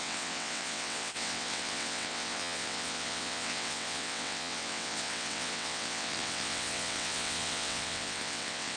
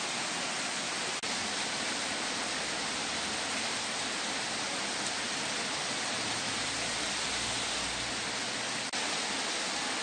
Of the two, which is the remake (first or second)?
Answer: first